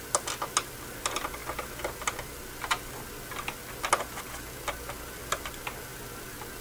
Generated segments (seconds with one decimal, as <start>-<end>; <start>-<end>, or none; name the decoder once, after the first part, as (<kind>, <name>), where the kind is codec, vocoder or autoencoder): none